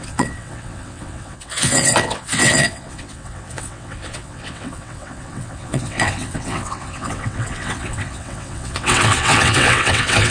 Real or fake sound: fake